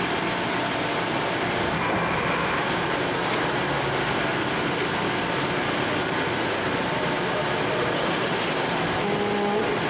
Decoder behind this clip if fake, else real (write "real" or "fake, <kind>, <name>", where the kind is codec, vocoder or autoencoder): real